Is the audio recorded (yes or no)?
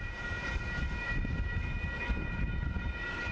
no